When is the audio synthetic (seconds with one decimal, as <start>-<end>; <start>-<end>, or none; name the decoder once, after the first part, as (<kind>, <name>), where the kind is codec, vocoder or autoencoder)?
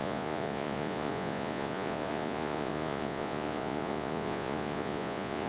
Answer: 0.0-5.5 (vocoder, Vocos)